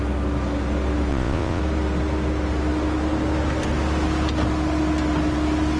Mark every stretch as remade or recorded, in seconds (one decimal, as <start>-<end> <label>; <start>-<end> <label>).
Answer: 0.0-1.1 recorded; 1.1-1.6 remade; 1.6-5.8 recorded